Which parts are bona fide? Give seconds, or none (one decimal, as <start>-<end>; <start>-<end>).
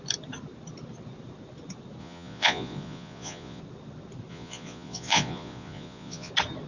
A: 0.0-2.0; 3.6-4.3; 6.3-6.7